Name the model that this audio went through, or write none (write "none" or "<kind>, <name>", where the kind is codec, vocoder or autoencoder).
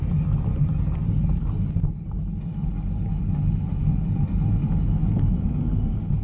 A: none